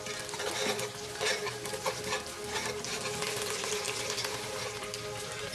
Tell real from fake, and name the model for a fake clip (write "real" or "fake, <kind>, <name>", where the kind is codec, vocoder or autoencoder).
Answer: real